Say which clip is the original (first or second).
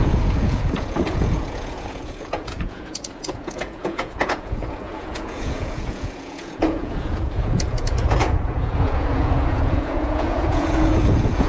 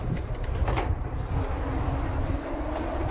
second